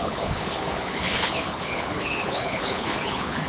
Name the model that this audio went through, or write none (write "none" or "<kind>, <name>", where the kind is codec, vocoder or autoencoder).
codec, HILCodec